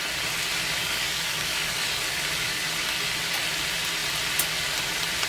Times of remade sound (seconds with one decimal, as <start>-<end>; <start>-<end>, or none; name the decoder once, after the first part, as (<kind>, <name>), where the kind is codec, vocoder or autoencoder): 0.8-2.6 (codec, DAC)